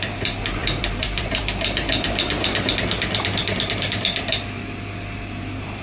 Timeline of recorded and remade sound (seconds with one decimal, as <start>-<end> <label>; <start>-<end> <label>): 0.0-0.6 recorded; 0.6-2.7 remade; 2.7-5.8 recorded

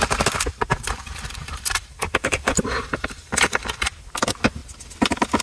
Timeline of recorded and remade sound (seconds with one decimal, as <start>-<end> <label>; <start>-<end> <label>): 0.0-0.7 recorded; 0.7-3.9 remade; 3.9-5.4 recorded

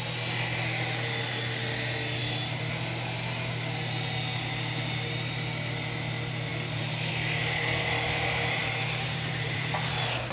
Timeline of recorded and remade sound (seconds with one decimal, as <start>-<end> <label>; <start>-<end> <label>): 0.0-6.5 recorded; 6.5-7.1 remade; 7.1-8.6 recorded; 8.6-9.9 remade; 9.9-10.3 recorded